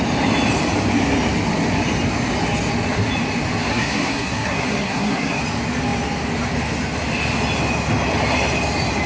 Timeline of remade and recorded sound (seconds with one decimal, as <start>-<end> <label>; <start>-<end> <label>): 0.0-3.7 recorded; 3.7-5.4 remade; 5.4-9.1 recorded